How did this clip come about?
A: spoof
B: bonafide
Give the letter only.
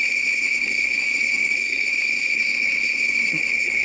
A